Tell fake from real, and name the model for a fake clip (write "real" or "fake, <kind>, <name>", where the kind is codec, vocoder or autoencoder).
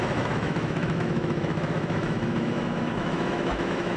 fake, autoencoder, DAC-VAE